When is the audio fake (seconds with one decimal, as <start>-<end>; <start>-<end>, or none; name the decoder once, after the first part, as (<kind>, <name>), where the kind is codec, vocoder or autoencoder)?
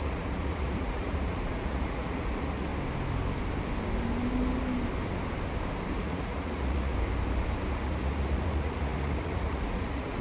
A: 0.0-2.7 (vocoder, Vocos); 5.9-6.9; 7.7-10.2